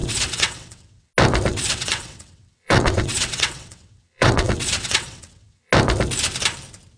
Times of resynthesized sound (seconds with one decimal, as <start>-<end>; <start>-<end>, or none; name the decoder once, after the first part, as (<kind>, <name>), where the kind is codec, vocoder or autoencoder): 0.0-1.1 (vocoder, WaveNeXt); 1.5-5.7